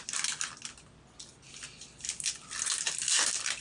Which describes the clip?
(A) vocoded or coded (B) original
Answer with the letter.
B